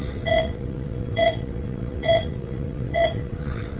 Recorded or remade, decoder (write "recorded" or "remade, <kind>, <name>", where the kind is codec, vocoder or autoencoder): remade, vocoder, WaveNeXt